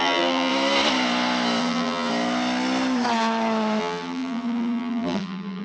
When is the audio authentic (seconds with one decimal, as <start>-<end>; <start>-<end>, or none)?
0.5-1.6; 2.1-3.8